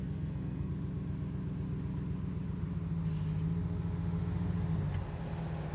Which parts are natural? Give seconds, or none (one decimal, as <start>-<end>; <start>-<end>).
0.7-5.7